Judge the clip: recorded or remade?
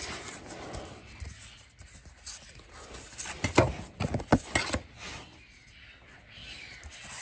recorded